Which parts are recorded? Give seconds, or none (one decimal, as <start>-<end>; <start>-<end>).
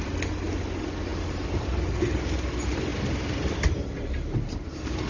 0.0-5.1